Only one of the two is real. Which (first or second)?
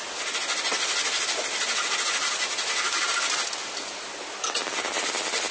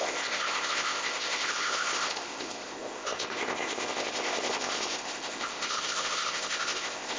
first